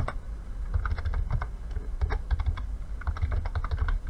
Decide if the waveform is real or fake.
real